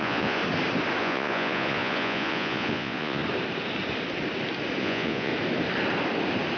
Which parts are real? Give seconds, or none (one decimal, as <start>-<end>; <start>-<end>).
0.4-1.0; 3.2-4.8; 5.3-6.6